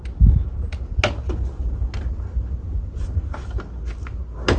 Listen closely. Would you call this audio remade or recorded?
recorded